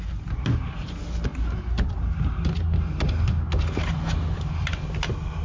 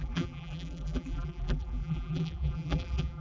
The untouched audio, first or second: first